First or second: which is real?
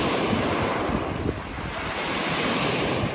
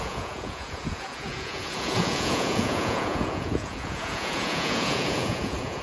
first